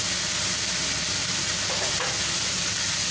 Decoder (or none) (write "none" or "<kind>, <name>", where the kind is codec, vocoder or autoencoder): none